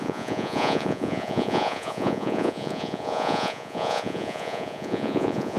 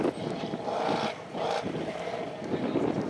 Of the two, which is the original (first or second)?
second